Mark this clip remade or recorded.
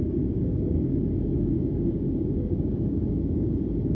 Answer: remade